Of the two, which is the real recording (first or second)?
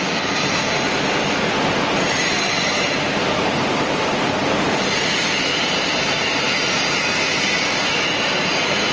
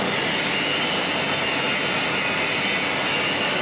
second